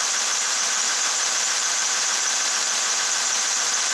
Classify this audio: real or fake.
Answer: fake